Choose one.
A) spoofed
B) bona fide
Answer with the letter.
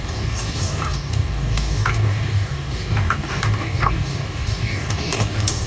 A